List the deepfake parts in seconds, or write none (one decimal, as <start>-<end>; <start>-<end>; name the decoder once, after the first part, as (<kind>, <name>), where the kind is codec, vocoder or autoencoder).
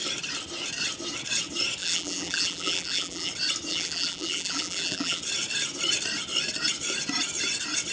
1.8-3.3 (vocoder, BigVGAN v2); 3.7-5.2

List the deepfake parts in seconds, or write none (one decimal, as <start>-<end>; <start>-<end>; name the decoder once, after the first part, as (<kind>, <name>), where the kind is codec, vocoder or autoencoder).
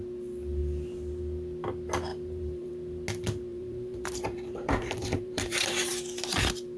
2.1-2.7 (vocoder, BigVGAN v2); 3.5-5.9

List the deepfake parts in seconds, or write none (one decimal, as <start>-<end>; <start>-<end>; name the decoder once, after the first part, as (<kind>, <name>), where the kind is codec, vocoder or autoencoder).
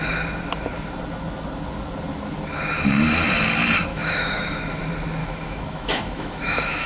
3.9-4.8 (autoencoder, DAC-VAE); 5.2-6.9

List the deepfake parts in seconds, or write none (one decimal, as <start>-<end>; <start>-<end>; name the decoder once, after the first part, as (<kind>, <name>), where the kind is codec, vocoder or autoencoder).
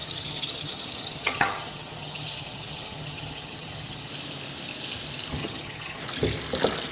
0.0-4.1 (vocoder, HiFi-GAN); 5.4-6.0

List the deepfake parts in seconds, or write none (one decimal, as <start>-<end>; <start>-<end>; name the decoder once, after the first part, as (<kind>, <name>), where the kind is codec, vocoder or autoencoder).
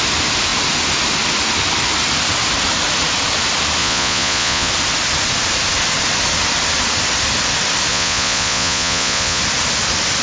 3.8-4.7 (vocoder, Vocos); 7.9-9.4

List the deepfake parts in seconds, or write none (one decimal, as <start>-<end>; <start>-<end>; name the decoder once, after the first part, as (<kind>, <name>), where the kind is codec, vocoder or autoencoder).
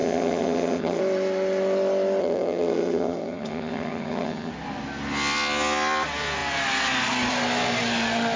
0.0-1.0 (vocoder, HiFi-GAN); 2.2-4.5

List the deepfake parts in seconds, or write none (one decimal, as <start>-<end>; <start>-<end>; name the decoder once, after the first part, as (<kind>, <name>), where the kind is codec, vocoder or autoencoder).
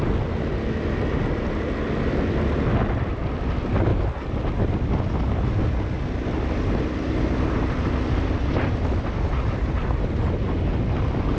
none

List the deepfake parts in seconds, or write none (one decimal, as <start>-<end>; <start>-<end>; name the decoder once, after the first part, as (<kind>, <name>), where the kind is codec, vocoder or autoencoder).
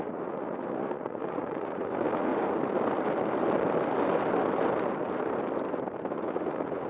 0.0-2.3 (vocoder, Vocos); 6.1-6.9